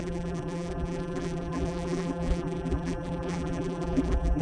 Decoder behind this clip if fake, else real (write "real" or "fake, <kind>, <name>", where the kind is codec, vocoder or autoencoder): fake, vocoder, BigVGAN v2